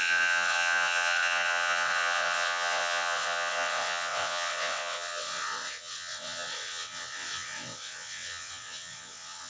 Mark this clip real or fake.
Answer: fake